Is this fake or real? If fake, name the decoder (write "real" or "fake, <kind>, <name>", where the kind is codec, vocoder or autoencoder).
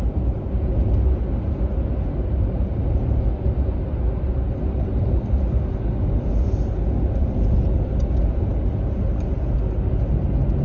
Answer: real